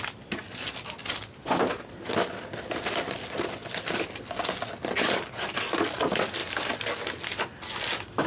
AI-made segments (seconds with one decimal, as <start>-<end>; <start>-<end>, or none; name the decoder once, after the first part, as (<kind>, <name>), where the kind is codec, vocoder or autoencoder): none